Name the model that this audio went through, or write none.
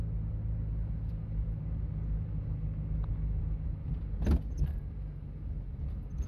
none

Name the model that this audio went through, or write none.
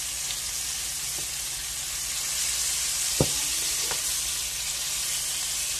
none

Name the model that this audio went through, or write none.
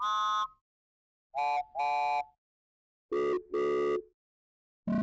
none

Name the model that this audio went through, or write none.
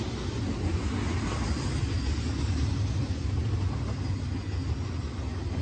none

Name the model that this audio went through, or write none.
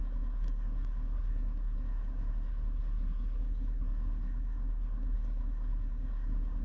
codec, SNAC